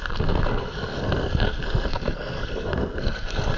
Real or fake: fake